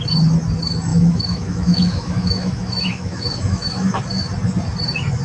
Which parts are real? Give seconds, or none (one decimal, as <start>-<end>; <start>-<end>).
0.0-0.9; 4.0-5.2